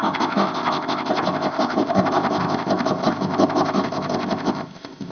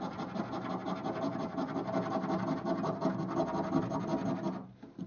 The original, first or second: second